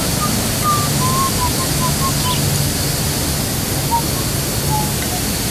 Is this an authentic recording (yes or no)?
yes